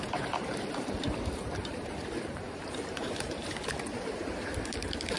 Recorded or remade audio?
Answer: remade